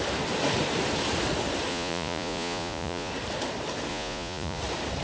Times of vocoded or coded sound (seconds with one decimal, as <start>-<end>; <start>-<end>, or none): 1.7-3.1; 3.9-4.6